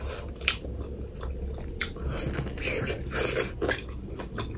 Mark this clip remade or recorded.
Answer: recorded